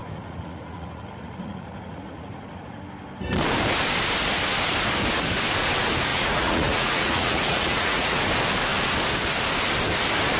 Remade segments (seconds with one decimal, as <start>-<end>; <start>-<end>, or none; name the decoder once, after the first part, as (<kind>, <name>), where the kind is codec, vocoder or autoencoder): 0.0-2.8 (vocoder, Vocos); 6.1-8.2